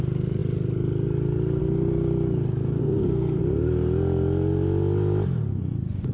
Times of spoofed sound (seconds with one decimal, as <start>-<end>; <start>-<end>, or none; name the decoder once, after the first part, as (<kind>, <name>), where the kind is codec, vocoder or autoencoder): 2.8-3.4 (codec, SNAC)